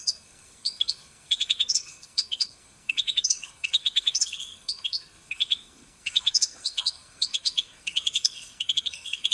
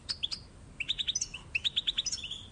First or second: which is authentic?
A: second